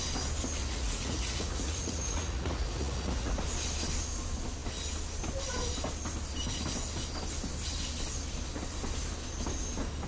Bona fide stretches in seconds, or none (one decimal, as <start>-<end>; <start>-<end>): 0.0-0.6; 3.4-10.1